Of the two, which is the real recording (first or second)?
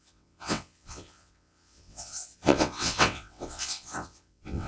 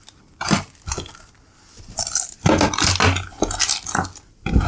second